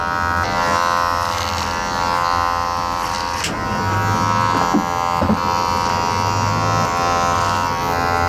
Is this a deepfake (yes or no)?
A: no